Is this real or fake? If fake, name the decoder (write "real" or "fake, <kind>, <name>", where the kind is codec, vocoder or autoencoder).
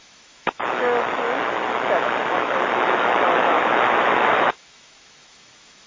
fake, autoencoder, DAC-VAE